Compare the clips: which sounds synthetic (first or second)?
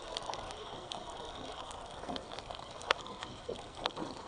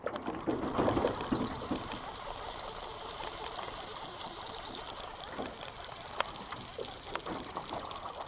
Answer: first